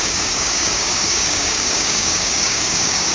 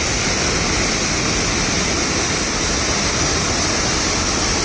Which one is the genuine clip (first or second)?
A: second